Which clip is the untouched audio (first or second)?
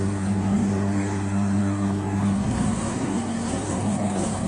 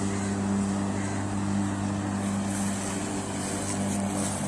second